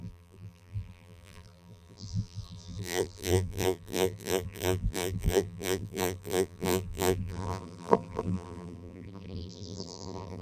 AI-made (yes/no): yes